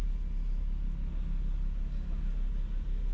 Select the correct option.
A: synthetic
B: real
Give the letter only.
B